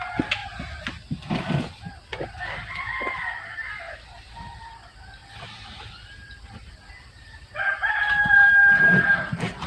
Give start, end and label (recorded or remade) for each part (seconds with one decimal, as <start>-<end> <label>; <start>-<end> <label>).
0.0-0.4 remade; 0.4-3.5 recorded; 3.5-9.7 remade